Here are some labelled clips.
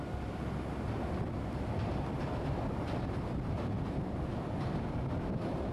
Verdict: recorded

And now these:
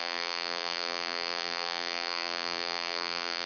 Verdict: remade